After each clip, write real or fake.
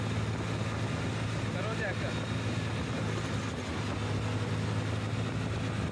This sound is real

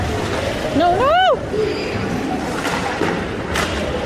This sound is real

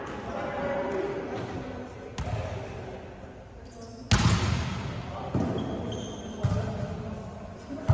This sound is real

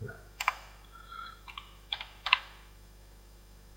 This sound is fake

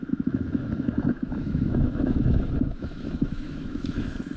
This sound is fake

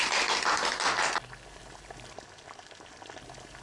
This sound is real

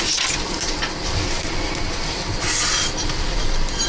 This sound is real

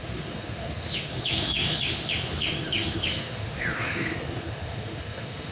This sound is fake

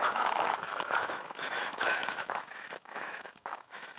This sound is fake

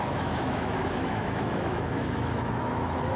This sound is fake